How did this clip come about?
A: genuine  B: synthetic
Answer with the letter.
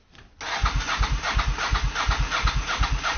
A